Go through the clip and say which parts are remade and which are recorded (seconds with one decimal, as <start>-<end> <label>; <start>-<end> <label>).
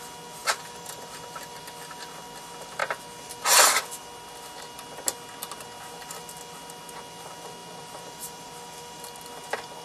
0.0-0.4 recorded; 0.4-1.1 remade; 1.1-7.6 recorded; 7.6-9.0 remade; 9.0-9.8 recorded